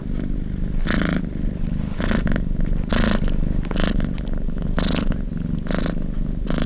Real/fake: real